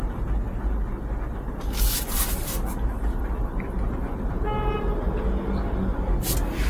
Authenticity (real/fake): real